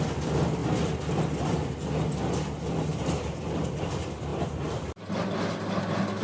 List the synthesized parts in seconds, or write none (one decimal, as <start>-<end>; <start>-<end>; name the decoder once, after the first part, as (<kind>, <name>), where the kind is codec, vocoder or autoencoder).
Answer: 2.9-3.9 (vocoder, BigVGAN v2); 4.3-5.1